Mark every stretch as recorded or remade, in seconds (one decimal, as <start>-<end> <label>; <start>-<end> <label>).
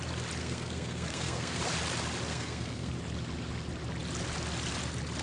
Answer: 0.0-0.4 recorded; 0.4-1.6 remade; 1.6-2.3 recorded; 2.3-2.9 remade; 2.9-5.2 recorded